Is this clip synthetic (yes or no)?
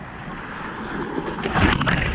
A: no